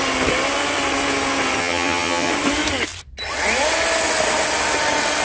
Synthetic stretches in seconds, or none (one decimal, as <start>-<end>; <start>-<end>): 1.6-2.3